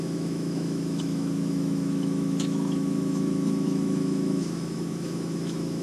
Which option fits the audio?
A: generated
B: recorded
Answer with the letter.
A